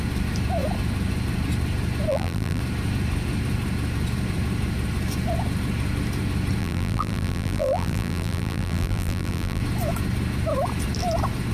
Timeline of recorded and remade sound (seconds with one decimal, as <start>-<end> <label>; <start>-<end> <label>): 0.0-2.1 recorded; 2.1-2.6 remade; 2.6-6.6 recorded; 6.6-9.6 remade; 9.6-11.5 recorded